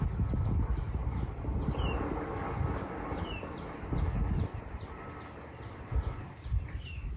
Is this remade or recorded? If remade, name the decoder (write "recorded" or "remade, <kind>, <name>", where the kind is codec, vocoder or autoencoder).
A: recorded